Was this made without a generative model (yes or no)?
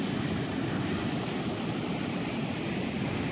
yes